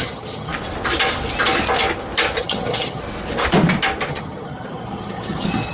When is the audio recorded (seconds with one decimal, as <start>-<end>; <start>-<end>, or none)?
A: 0.5-2.4; 3.0-4.1